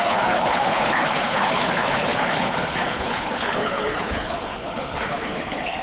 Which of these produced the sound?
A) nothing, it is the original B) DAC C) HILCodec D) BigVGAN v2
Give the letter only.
C